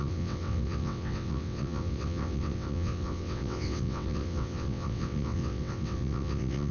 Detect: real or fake fake